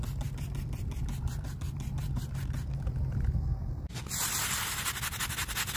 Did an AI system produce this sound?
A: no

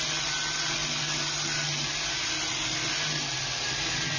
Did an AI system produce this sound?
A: no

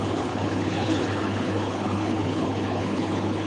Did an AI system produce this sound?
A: yes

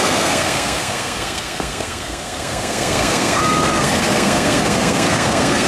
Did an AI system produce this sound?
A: yes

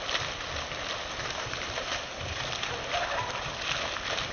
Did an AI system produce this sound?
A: no